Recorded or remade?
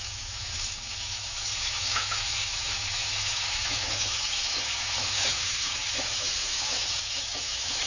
remade